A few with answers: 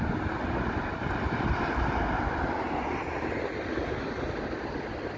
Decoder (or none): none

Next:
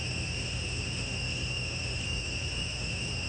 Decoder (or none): autoencoder, DAC-VAE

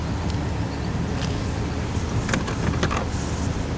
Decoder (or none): none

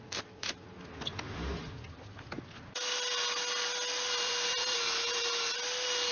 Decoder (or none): none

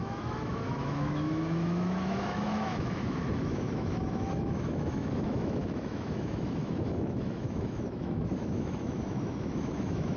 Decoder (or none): autoencoder, DAC-VAE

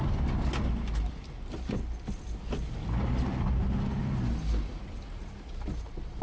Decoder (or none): none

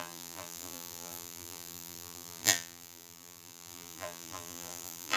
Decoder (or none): vocoder, BigVGAN v2